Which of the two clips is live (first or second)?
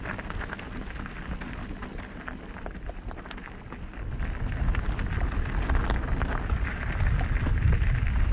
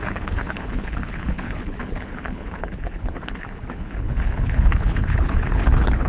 first